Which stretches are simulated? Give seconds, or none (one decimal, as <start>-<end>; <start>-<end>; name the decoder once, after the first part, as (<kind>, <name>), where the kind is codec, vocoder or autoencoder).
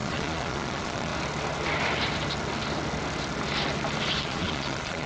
0.0-1.1 (vocoder, Vocos); 4.2-5.1